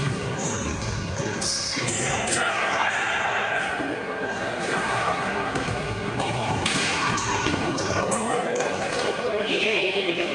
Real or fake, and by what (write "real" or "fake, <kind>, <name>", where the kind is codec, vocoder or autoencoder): fake, codec, SNAC